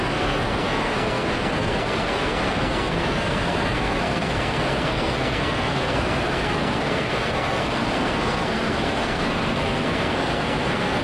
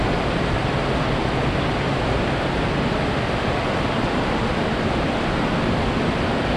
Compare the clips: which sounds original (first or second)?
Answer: second